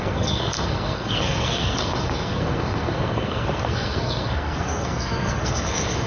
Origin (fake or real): fake